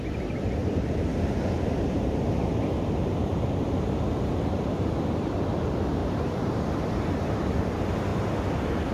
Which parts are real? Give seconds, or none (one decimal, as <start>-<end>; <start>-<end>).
0.0-0.6; 4.7-6.0; 6.6-8.9